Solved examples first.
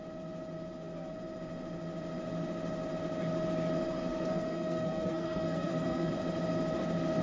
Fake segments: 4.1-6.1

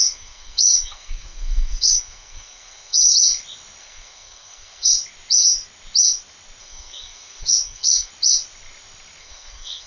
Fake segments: 0.0-3.1; 3.8-4.9; 6.6-8.1; 9.2-9.9